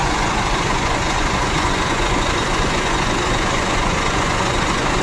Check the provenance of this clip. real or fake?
fake